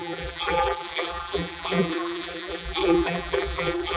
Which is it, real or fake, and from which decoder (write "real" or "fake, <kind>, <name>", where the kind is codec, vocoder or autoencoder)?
fake, vocoder, BigVGAN v2